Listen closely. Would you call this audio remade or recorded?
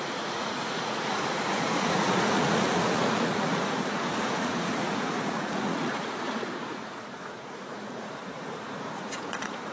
remade